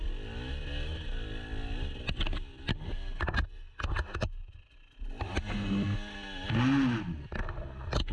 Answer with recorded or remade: recorded